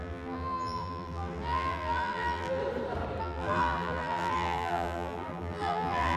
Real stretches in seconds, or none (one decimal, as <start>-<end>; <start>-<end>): 2.6-3.2